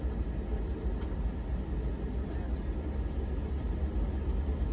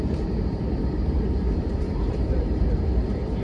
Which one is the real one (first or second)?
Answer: first